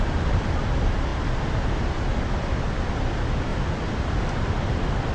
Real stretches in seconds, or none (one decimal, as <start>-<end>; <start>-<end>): 0.0-5.1